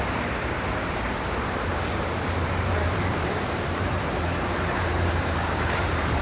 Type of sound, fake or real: fake